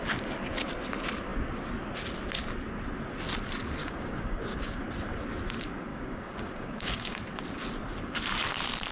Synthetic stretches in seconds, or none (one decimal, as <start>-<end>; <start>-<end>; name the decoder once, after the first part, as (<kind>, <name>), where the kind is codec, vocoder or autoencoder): 3.8-4.8 (codec, DAC); 5.9-7.2